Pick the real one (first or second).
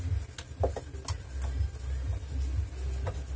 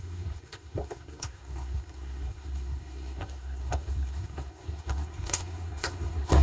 first